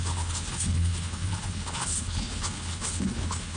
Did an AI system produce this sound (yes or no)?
yes